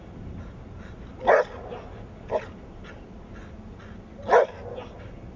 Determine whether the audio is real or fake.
real